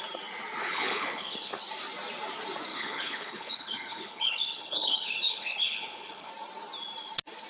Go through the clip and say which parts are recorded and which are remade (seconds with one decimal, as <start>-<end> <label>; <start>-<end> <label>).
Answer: 0.0-0.6 recorded; 0.6-1.6 remade; 1.6-2.7 recorded; 2.7-6.3 remade; 6.3-7.5 recorded